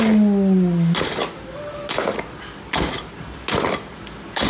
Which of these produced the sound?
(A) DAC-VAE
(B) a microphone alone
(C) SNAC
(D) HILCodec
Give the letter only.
B